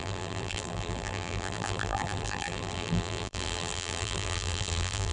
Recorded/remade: remade